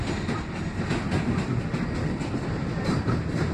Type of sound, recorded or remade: remade